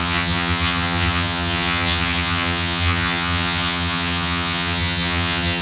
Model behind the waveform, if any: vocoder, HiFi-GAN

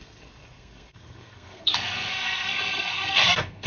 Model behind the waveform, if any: codec, SNAC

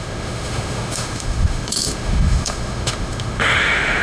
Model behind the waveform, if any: autoencoder, DAC-VAE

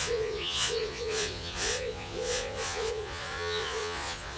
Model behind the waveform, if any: vocoder, Vocos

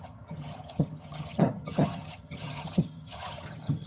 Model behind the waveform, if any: vocoder, HiFi-GAN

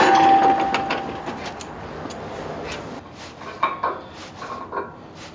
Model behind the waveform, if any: none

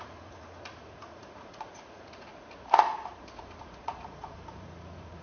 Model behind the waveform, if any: vocoder, Vocos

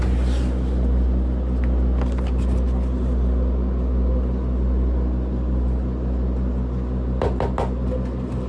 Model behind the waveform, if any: none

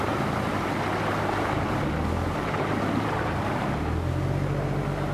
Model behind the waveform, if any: none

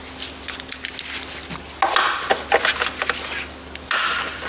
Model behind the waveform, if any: none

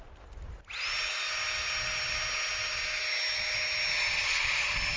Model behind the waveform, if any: none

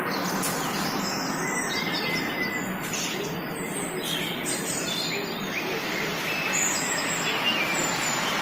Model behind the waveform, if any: none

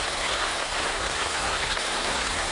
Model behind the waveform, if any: codec, SNAC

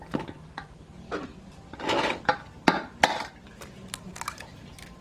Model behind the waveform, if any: none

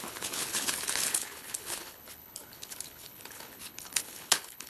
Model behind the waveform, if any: codec, HILCodec